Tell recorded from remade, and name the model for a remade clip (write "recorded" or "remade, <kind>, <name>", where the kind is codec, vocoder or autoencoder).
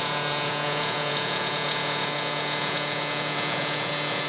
remade, vocoder, Vocos